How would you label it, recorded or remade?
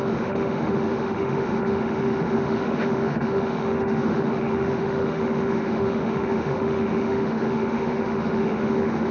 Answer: remade